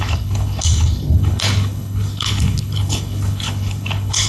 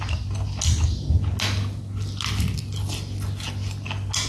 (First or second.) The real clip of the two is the second